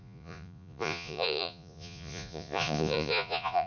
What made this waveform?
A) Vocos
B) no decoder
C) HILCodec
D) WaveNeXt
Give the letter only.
A